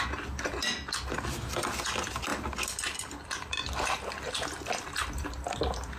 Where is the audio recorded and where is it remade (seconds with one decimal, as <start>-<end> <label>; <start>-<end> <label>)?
0.0-6.0 recorded